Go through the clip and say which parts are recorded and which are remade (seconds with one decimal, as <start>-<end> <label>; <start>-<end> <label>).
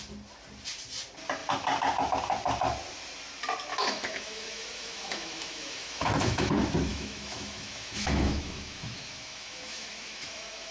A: 0.0-3.7 recorded; 3.7-6.5 remade; 6.5-6.9 recorded; 6.9-10.7 remade